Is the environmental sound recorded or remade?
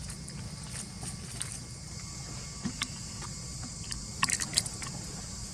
recorded